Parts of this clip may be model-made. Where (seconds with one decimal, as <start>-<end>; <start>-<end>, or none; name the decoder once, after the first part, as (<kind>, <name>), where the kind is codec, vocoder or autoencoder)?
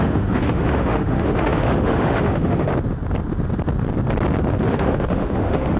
0.0-2.7 (autoencoder, DAC-VAE); 4.7-5.8